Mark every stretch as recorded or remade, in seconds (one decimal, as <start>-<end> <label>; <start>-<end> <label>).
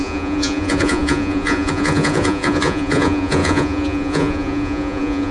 0.0-5.3 remade